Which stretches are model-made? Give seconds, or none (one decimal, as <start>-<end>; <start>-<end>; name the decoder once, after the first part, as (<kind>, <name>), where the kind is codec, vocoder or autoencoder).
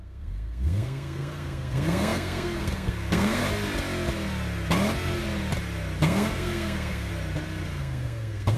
0.0-3.4 (codec, SNAC); 6.0-7.1; 7.8-8.6